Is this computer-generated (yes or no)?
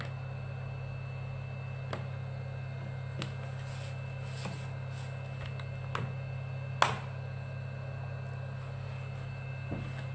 no